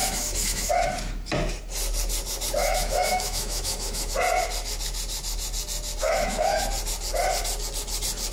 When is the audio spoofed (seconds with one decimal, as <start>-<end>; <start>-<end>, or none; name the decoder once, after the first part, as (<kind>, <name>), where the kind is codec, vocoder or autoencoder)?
0.0-0.7 (autoencoder, DAC-VAE); 2.6-4.1; 6.0-6.6